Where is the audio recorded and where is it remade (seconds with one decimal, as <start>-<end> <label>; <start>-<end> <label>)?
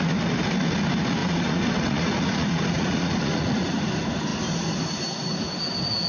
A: 0.0-1.2 recorded; 1.2-3.8 remade; 3.8-6.1 recorded